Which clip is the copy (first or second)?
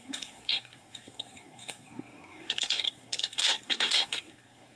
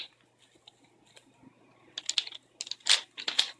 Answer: first